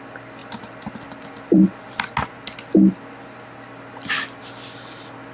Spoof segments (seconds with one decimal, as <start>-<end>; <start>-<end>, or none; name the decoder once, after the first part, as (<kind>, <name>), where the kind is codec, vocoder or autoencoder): 0.4-2.0 (vocoder, BigVGAN v2)